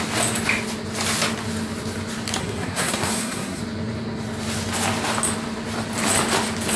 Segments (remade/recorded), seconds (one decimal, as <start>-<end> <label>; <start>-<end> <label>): 0.0-2.4 recorded; 2.4-3.6 remade; 3.6-6.8 recorded